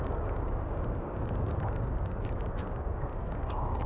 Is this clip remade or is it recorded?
remade